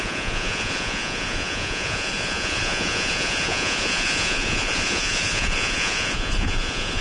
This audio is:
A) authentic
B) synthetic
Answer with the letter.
B